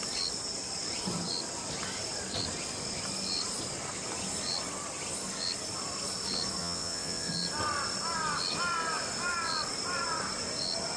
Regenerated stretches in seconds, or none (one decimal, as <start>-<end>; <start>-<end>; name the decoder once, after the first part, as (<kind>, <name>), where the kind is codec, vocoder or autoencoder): 6.6-7.3 (vocoder, WaveNeXt)